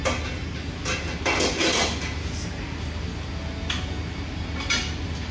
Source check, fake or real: real